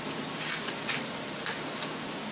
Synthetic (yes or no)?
no